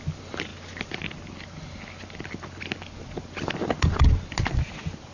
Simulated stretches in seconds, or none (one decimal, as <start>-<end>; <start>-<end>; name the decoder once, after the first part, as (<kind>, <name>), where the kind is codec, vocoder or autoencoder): none

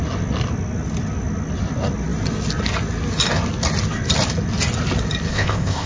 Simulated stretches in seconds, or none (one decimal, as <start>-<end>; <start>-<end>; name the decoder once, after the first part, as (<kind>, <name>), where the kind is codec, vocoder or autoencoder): 5.3-5.9 (codec, ZipCodec)

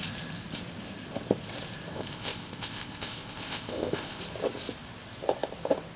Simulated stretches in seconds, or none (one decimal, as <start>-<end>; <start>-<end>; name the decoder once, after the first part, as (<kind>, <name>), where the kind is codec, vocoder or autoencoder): 1.9-4.2 (codec, ZipCodec)

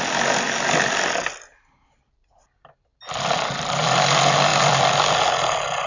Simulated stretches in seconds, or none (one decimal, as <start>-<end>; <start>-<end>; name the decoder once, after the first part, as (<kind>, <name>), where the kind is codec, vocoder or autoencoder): none

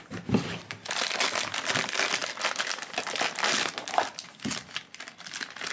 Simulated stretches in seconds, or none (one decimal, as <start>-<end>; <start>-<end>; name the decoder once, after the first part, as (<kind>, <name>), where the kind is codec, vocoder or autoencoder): none

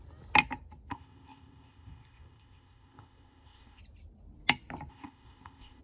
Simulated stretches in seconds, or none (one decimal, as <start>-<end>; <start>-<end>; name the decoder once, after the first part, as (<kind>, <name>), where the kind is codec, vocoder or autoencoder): 0.9-3.8 (codec, ZipCodec); 4.9-5.8